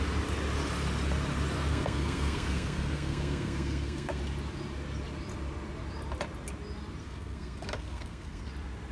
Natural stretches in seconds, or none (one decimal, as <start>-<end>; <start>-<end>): 0.0-1.7; 4.2-7.0; 8.5-8.9